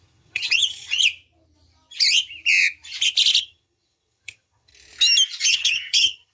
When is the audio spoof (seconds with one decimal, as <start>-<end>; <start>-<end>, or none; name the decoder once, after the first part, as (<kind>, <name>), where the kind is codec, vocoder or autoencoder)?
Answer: 0.0-1.0 (vocoder, HiFi-GAN); 3.4-4.7; 5.4-6.3